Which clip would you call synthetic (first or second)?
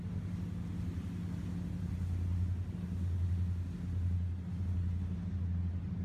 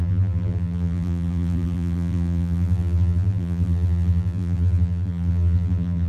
second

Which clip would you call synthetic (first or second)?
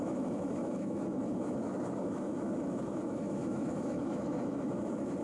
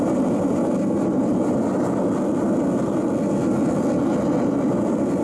first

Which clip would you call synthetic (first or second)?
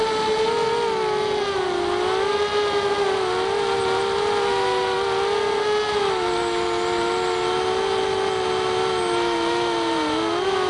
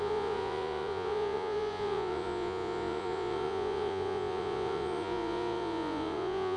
second